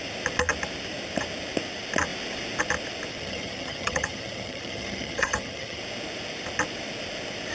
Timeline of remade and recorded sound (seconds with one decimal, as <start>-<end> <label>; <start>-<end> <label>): 0.0-3.1 recorded; 3.1-5.8 remade; 5.8-7.5 recorded